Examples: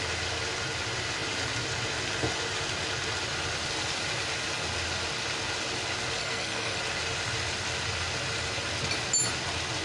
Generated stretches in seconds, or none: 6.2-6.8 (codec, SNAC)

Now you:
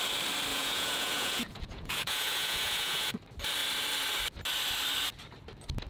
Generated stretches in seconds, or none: 0.5-3.1 (vocoder, Vocos)

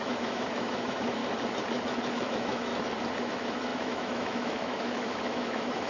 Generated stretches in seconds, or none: 0.0-1.2 (autoencoder, DAC-VAE); 2.1-2.7; 3.2-5.9

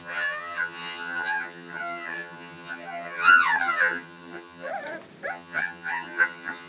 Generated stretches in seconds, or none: 0.0-4.7 (vocoder, HiFi-GAN); 5.3-6.7

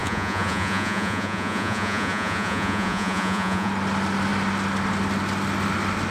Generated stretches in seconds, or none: 0.0-3.7 (vocoder, Vocos)

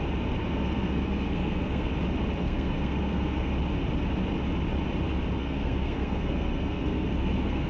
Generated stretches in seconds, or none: 0.4-1.9 (codec, SNAC); 2.4-3.5; 5.4-7.7

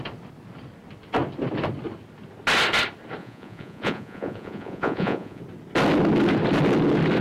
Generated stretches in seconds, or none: 3.2-5.4 (vocoder, Vocos)

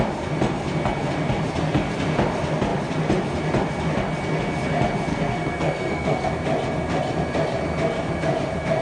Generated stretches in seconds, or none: 5.1-6.3 (codec, SNAC)